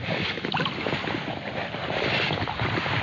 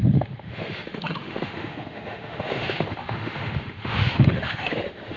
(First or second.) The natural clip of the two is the first